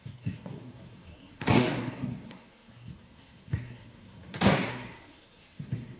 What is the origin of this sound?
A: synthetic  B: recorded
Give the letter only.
A